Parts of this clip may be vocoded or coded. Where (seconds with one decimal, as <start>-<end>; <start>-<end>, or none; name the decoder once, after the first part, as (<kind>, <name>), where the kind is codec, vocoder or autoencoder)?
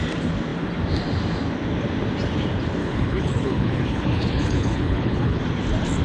2.8-5.4 (codec, HILCodec)